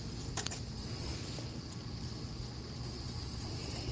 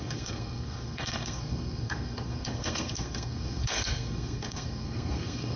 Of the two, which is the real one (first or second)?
first